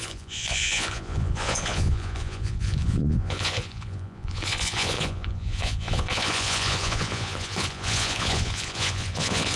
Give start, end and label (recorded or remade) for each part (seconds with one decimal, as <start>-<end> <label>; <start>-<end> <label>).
0.0-9.6 remade